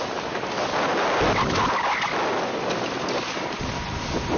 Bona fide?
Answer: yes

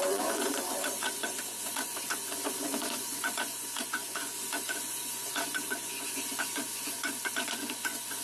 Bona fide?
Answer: no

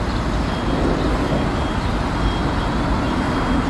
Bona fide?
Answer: yes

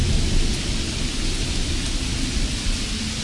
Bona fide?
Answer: yes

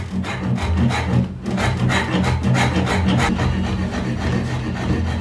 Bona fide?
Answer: yes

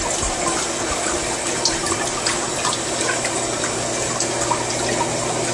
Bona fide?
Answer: yes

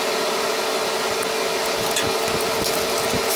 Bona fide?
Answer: yes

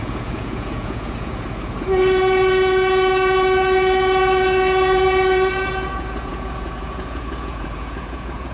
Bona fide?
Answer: no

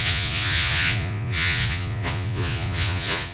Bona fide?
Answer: no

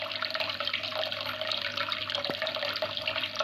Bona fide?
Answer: yes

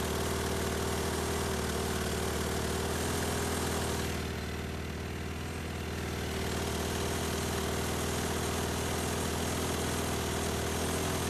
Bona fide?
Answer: yes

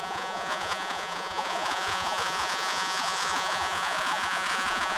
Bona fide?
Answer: no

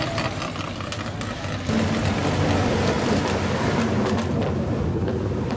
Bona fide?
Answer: yes